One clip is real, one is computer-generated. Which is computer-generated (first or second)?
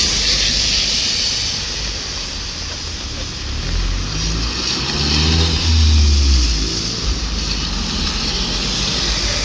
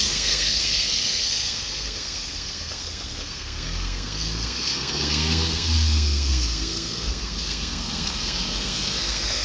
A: second